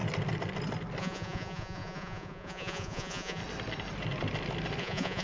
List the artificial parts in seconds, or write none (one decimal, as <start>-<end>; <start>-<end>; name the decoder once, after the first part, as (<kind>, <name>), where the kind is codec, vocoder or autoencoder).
1.0-3.4 (vocoder, Vocos); 4.8-5.2